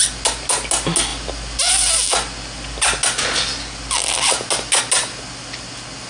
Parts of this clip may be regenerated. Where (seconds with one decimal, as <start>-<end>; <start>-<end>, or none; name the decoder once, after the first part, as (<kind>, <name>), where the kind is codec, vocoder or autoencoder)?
none

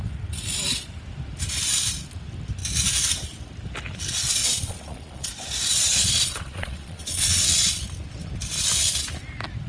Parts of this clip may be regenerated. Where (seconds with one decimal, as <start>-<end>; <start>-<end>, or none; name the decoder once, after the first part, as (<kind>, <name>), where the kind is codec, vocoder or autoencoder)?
4.4-5.3 (vocoder, Vocos); 5.7-7.8